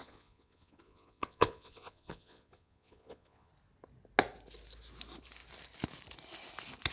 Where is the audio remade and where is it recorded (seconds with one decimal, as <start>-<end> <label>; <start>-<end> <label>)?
0.0-3.5 remade; 3.5-6.9 recorded